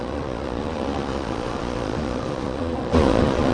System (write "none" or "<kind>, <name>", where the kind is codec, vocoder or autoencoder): vocoder, Vocos